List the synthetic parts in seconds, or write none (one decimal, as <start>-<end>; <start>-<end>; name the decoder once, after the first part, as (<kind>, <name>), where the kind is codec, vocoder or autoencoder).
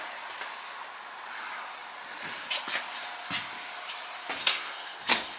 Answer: 4.4-5.4 (codec, SNAC)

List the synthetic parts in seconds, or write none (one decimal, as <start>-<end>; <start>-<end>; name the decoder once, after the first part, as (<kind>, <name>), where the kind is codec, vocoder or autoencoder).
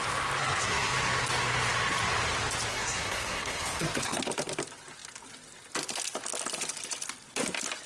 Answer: 0.4-0.9 (codec, SNAC); 2.7-4.2